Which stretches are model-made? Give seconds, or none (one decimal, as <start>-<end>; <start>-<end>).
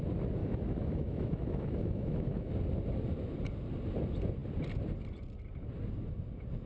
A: 0.4-2.5